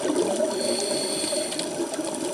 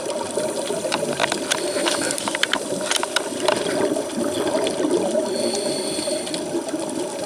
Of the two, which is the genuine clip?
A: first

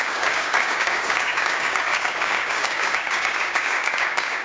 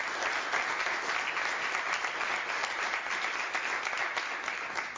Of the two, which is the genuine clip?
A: second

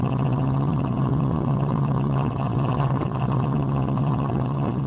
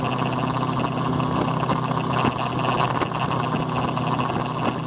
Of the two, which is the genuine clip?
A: second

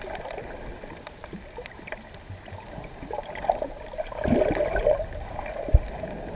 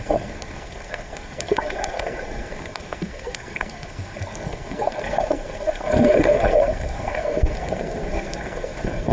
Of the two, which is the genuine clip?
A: first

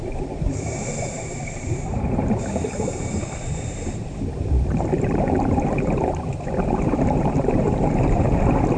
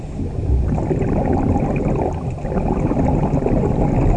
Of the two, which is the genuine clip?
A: second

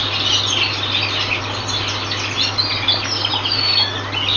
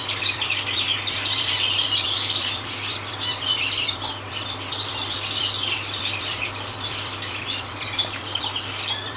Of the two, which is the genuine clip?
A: first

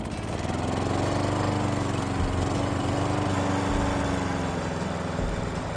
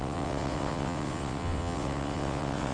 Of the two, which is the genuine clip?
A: first